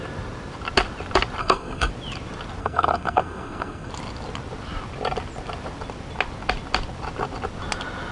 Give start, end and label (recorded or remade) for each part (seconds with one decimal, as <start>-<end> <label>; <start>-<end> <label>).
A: 0.0-1.4 recorded; 1.4-1.9 remade; 1.9-2.6 recorded; 2.6-3.9 remade; 3.9-8.1 recorded